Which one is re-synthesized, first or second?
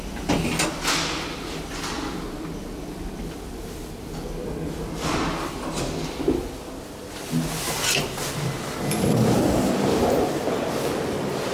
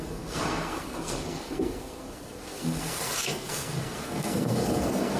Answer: second